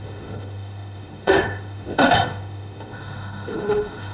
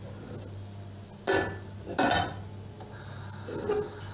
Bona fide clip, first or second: second